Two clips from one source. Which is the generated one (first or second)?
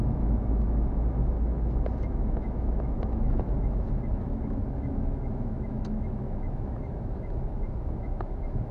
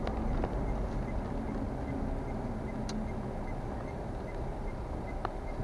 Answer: first